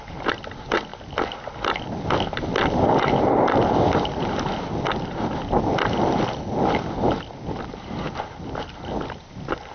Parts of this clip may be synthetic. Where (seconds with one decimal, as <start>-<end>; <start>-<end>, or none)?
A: none